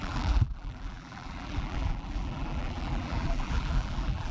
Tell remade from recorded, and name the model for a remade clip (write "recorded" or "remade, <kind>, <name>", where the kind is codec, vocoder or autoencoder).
remade, vocoder, BigVGAN v2